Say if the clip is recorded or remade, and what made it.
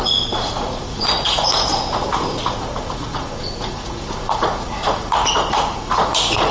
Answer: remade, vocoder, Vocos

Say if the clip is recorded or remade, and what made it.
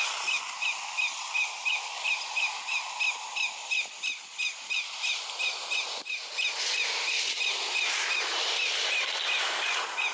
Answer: recorded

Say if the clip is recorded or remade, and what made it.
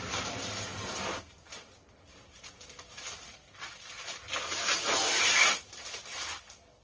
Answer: recorded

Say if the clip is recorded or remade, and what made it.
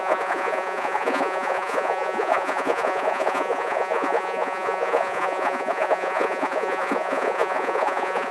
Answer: remade, vocoder, Vocos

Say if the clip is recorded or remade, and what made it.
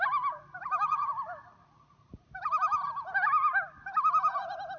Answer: recorded